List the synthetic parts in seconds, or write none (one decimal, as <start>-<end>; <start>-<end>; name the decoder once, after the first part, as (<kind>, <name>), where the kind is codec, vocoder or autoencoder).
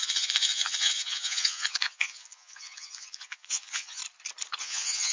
0.0-4.0 (vocoder, Vocos); 4.6-5.1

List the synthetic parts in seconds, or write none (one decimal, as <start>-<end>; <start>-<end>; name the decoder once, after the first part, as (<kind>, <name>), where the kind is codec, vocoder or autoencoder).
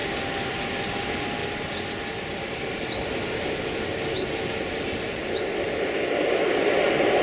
none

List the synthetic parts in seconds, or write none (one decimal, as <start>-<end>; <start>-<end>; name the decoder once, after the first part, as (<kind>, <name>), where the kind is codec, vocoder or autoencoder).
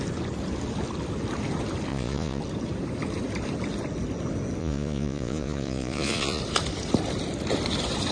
1.9-2.4 (vocoder, Vocos); 4.6-6.4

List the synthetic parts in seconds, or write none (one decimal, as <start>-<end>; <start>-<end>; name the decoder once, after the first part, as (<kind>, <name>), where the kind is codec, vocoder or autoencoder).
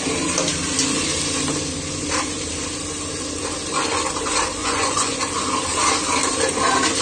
4.6-5.2 (vocoder, Vocos)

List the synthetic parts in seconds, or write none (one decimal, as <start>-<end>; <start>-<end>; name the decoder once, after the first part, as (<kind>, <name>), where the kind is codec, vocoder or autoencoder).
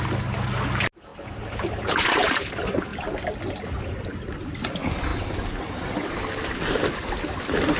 none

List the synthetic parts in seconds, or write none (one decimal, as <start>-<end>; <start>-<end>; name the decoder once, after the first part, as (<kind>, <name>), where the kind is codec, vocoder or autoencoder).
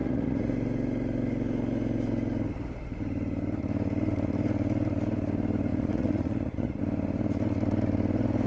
0.0-0.5 (vocoder, Vocos); 5.7-6.8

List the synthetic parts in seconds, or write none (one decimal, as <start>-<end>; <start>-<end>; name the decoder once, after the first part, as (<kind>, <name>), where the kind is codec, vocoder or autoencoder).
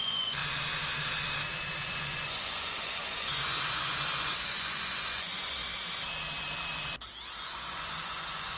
0.0-0.4 (vocoder, Vocos); 1.9-5.6; 7.4-8.6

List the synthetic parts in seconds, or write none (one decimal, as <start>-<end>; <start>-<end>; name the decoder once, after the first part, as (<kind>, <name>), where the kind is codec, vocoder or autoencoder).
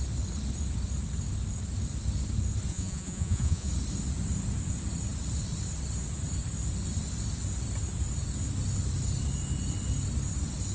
2.7-3.7 (vocoder, Vocos)